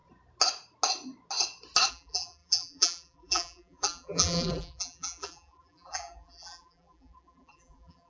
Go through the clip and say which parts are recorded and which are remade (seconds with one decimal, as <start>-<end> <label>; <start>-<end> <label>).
0.0-1.9 recorded; 1.9-8.1 remade